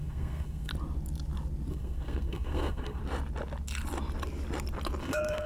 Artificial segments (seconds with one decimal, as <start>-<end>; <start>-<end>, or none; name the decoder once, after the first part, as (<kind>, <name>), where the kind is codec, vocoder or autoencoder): 0.0-0.7 (codec, SNAC); 1.7-3.0; 5.0-5.5